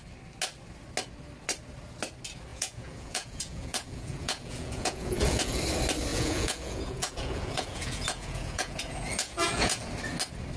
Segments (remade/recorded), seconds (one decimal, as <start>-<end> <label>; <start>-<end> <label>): 0.0-2.5 recorded; 2.5-5.6 remade; 5.6-6.1 recorded; 6.1-9.9 remade; 9.9-10.6 recorded